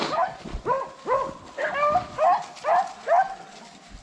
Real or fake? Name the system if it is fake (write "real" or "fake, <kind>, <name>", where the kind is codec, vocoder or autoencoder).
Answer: real